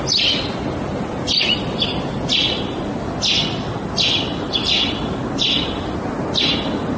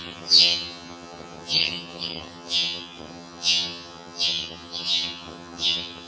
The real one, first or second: first